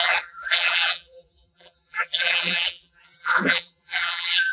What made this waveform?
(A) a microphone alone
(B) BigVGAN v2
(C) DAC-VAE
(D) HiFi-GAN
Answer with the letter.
B